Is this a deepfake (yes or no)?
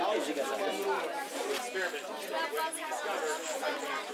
no